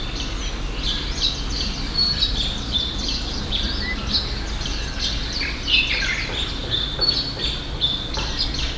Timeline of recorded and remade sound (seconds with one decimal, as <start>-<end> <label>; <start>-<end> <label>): 0.0-8.8 recorded